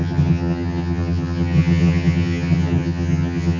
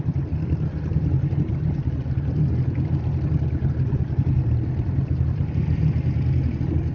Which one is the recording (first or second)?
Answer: second